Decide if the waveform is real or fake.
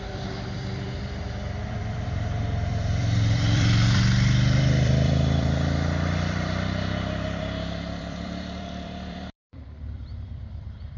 fake